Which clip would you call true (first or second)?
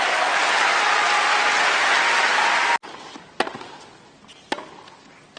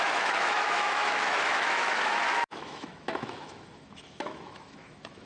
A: first